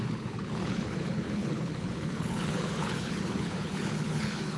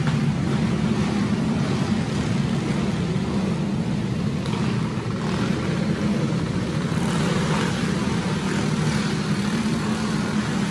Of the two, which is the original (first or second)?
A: second